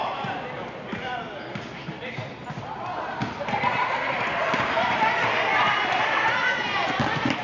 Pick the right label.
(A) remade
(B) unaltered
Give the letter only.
B